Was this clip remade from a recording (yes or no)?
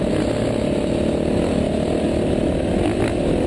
no